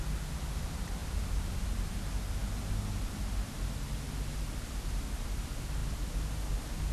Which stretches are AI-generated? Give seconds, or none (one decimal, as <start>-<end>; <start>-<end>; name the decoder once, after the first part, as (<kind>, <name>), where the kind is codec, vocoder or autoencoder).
none